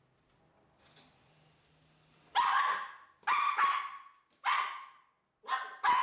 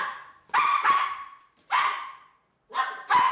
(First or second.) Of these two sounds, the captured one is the first